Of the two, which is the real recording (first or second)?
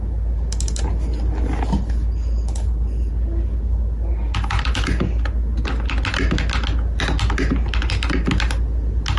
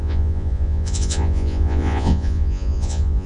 first